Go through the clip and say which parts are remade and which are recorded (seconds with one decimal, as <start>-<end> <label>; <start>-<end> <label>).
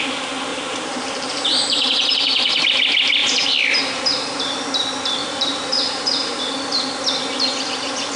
0.0-0.5 recorded; 0.5-2.6 remade; 2.6-5.2 recorded; 5.2-6.4 remade; 6.4-8.2 recorded